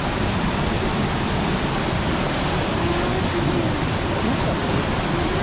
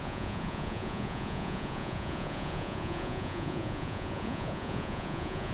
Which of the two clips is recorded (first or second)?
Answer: first